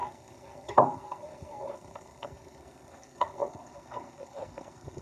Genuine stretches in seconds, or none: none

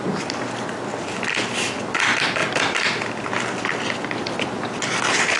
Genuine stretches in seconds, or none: 0.0-5.4

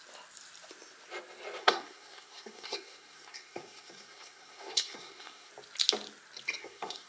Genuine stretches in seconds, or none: 0.0-1.6; 5.5-6.6

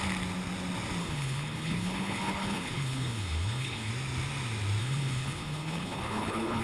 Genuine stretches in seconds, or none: 0.0-1.0; 3.9-4.8

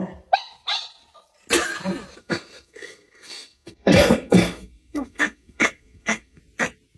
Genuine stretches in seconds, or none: 0.0-2.2; 6.4-7.0

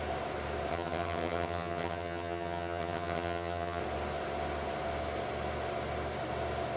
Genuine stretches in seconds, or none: 0.0-0.7; 3.8-6.8

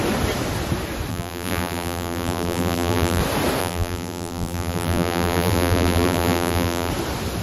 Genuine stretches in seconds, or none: 0.0-1.1; 3.2-3.6; 6.9-7.4